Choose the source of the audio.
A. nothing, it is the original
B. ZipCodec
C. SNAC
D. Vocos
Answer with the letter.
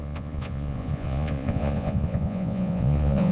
D